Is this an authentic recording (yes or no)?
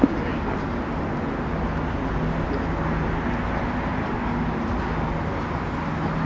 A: yes